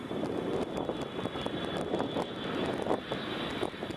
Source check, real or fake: real